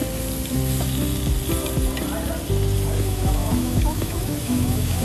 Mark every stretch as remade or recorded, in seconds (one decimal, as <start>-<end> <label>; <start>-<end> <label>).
0.0-3.0 recorded; 3.0-5.0 remade